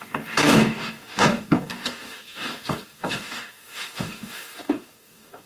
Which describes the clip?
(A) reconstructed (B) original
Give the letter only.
A